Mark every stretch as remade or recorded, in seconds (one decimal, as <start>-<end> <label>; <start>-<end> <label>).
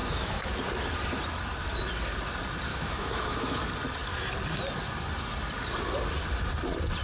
0.0-0.5 remade; 0.5-2.7 recorded; 2.7-3.6 remade; 3.6-7.0 recorded